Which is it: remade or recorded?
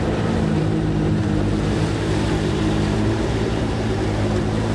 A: remade